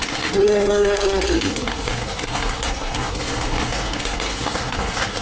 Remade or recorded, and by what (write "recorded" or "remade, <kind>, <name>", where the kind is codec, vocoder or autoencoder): remade, codec, SNAC